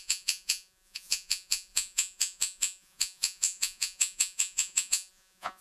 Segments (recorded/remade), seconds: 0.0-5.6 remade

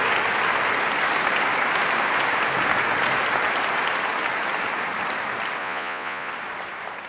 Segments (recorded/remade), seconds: 0.0-5.6 recorded; 5.6-6.3 remade; 6.3-7.1 recorded